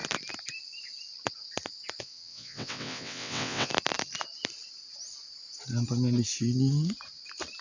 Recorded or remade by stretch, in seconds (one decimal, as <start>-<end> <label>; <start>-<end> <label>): 0.0-2.0 recorded; 2.0-3.7 remade; 3.7-7.6 recorded